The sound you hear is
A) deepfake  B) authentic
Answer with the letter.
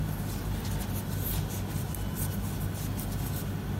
B